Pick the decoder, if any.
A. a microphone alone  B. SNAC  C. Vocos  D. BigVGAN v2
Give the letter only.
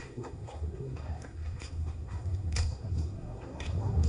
B